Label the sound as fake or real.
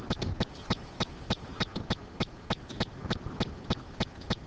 real